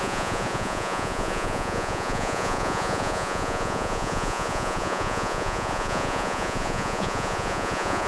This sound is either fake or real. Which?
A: fake